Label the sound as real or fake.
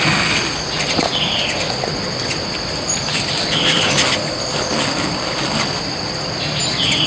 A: real